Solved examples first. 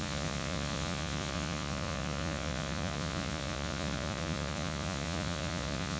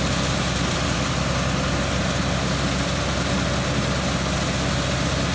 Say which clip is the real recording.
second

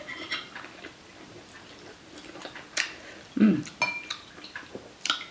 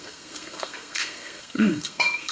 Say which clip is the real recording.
first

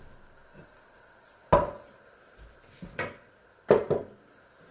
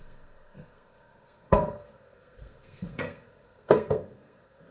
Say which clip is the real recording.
first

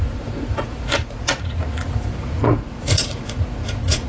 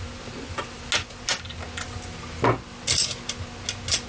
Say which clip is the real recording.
second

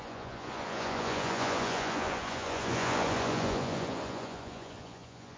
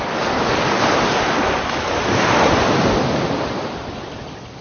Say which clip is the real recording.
second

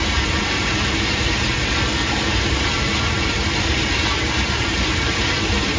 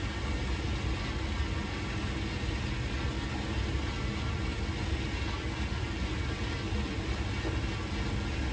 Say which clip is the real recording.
second